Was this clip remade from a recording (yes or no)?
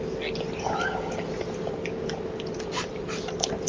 no